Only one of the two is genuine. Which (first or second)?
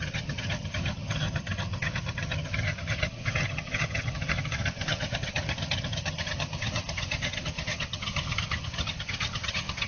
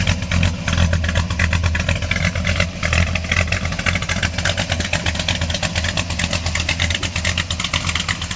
second